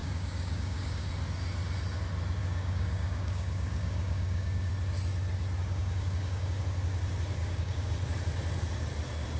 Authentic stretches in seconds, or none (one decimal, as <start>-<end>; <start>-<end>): 1.1-2.4; 4.7-5.6; 6.6-7.4; 7.9-9.4